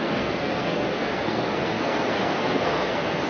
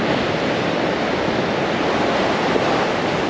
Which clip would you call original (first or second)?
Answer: second